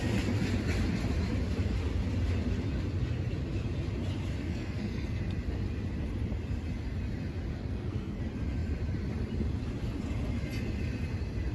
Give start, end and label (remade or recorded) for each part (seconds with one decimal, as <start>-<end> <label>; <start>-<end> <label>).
0.0-4.4 recorded; 4.4-5.2 remade; 5.2-7.5 recorded; 7.5-8.2 remade; 8.2-11.5 recorded